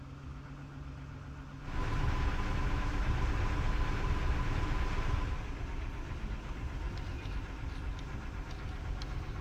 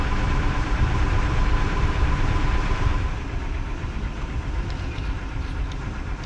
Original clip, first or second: first